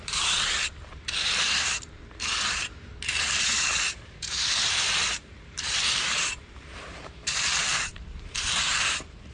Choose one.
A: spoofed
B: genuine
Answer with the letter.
A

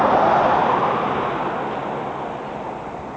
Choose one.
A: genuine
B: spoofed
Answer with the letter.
A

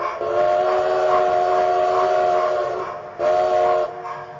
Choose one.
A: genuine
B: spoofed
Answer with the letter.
A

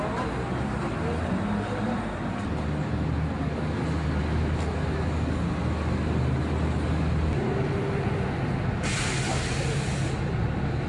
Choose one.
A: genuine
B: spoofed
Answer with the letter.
A